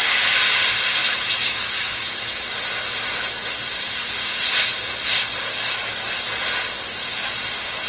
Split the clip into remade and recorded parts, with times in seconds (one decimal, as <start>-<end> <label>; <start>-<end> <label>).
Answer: 0.0-1.0 recorded; 1.0-2.5 remade; 2.5-7.9 recorded